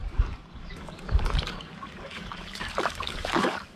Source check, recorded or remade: remade